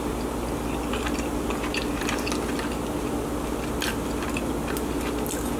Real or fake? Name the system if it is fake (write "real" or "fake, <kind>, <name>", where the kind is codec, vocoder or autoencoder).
real